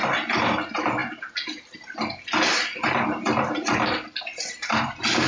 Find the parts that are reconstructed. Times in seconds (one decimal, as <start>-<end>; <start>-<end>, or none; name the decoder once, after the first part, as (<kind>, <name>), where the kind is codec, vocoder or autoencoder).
none